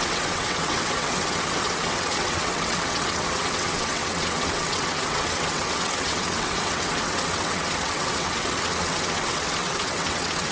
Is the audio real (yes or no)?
no